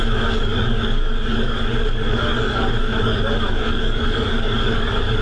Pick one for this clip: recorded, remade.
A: remade